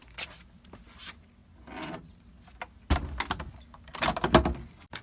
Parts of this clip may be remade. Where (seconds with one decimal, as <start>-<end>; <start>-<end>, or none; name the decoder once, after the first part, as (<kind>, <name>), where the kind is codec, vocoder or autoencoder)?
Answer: none